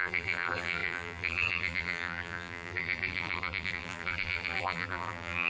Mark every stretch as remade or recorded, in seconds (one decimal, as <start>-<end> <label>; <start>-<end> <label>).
0.0-5.5 remade